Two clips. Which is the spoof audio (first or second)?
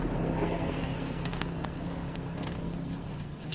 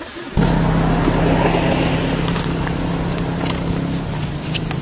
first